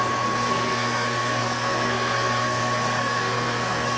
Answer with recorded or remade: remade